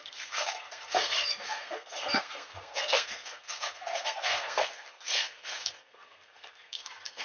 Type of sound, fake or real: fake